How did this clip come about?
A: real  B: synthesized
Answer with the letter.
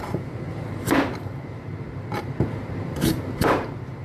B